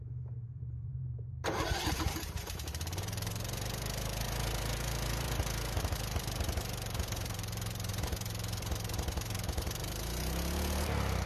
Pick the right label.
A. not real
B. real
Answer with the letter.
A